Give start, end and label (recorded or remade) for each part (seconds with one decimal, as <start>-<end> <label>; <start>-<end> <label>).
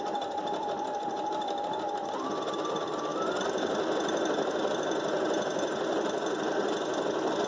0.0-7.5 recorded